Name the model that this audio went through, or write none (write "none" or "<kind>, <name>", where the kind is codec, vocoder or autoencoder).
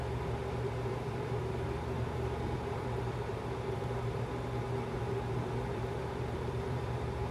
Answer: vocoder, BigVGAN v2